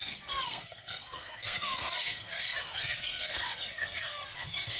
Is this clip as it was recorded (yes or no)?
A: no